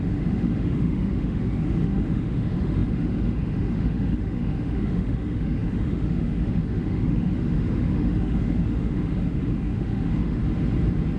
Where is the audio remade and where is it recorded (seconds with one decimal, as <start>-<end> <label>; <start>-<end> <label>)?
0.0-10.4 remade; 10.4-11.2 recorded